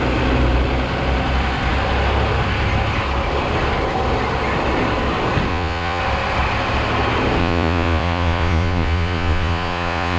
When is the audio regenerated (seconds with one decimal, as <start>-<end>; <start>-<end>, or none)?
5.5-6.0; 7.4-10.2